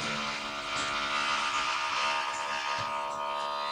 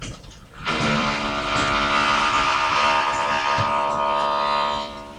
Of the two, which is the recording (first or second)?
first